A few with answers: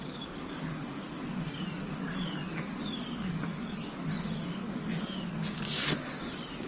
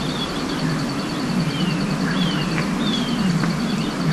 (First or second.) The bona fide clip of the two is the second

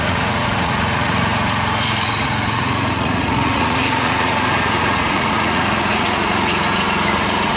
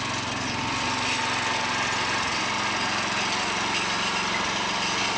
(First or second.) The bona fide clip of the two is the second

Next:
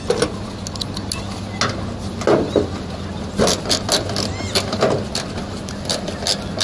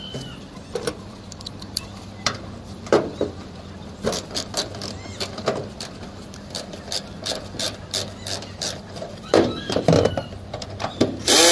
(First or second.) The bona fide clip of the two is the first